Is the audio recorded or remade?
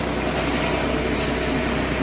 remade